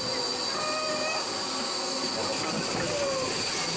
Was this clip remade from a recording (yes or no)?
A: no